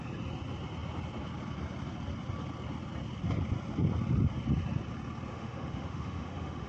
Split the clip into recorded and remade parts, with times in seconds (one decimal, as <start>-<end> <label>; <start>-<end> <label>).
0.0-5.3 recorded; 5.3-6.7 remade